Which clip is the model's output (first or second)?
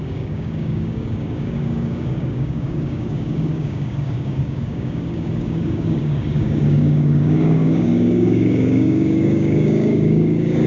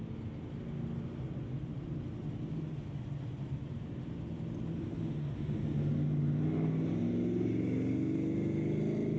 first